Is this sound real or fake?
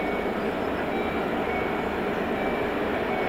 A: real